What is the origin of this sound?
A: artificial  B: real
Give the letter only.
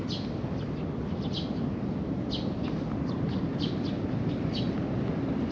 B